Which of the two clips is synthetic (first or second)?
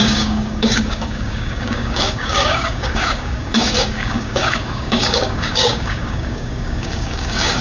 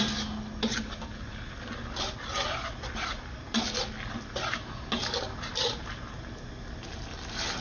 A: first